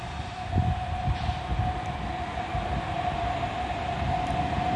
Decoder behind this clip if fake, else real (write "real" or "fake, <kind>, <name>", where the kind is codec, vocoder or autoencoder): fake, vocoder, BigVGAN v2